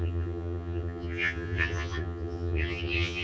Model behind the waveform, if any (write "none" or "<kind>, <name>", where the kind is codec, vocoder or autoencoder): vocoder, HiFi-GAN